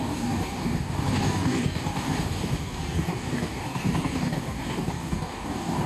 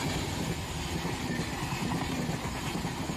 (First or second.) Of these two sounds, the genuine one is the second